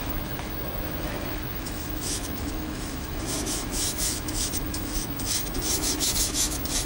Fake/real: fake